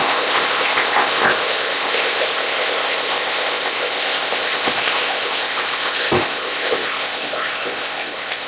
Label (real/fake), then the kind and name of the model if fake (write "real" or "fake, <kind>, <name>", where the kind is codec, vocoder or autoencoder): fake, codec, ZipCodec